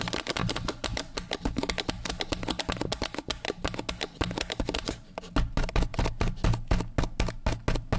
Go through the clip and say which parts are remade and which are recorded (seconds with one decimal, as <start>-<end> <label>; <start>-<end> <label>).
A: 0.0-8.0 recorded

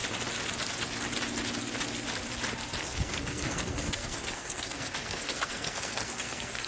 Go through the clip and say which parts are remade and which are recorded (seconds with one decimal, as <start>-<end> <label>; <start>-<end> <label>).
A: 0.0-2.8 recorded; 2.8-6.7 remade

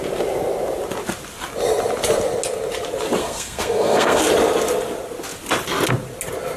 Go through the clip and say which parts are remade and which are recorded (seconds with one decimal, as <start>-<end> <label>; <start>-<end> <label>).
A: 0.0-3.2 recorded; 3.2-4.2 remade; 4.2-6.6 recorded

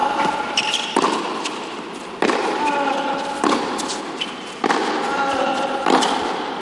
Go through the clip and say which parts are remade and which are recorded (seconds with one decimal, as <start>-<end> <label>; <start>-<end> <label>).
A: 0.0-6.6 remade

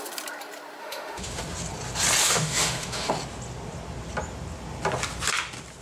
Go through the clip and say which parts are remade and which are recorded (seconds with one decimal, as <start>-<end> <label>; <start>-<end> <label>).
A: 0.0-0.8 recorded; 0.8-1.4 remade; 1.4-2.2 recorded; 2.2-3.1 remade; 3.1-5.8 recorded